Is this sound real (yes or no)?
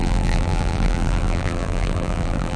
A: no